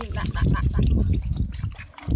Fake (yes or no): no